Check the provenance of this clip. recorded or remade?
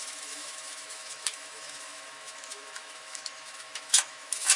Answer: remade